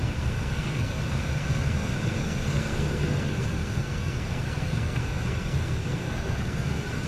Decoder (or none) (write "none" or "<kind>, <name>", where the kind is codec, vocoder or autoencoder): codec, SNAC